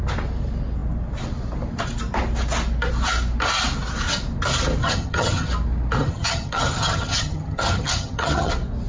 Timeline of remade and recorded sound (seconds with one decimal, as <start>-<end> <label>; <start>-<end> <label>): 0.0-4.8 recorded; 4.8-5.5 remade; 5.5-6.0 recorded; 6.0-8.5 remade; 8.5-8.9 recorded